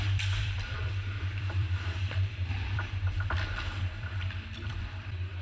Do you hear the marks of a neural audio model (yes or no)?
yes